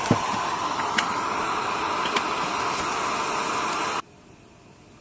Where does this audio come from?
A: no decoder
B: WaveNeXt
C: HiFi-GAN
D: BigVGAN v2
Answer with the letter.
A